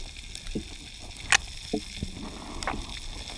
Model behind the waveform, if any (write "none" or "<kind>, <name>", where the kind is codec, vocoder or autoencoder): none